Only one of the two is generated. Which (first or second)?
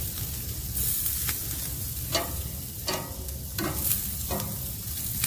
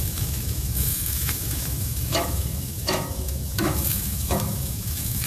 second